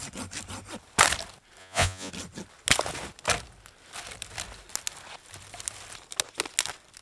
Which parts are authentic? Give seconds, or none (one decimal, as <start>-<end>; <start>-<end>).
0.0-1.6; 2.1-7.0